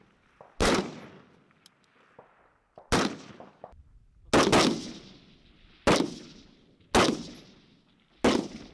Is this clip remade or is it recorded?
recorded